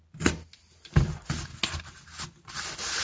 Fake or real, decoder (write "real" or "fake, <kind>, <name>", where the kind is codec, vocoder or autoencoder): real